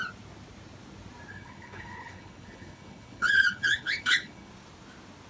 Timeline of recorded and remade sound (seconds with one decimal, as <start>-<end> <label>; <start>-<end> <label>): 0.0-1.3 recorded; 1.3-4.5 remade; 4.5-5.3 recorded